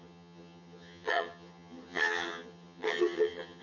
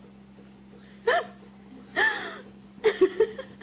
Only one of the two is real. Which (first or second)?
second